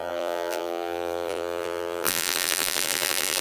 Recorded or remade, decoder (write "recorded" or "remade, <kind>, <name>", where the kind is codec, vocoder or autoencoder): remade, vocoder, BigVGAN v2